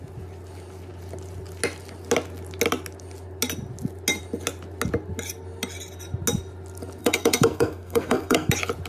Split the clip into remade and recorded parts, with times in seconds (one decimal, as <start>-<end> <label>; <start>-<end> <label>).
0.0-7.0 recorded; 7.0-8.5 remade; 8.5-8.9 recorded